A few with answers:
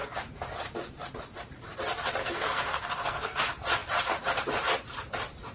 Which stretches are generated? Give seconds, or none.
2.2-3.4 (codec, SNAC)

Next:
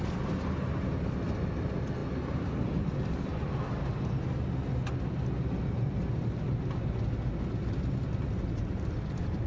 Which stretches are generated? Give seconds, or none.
none

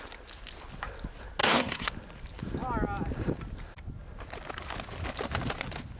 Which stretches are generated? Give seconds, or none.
1.4-1.9 (codec, SNAC)

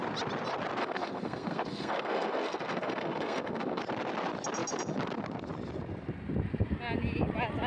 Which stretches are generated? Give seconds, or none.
0.8-3.8 (codec, SNAC)

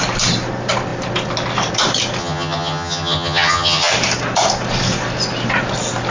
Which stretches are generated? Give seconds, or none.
2.2-3.9 (vocoder, HiFi-GAN)